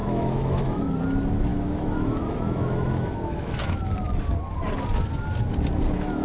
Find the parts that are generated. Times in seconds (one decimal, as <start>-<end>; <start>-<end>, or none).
0.0-1.0; 1.5-3.9